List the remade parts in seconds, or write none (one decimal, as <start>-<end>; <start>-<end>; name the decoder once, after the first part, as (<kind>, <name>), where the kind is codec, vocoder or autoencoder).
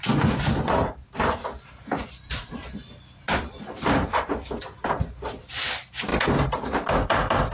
1.4-5.4 (vocoder, BigVGAN v2); 6.1-6.9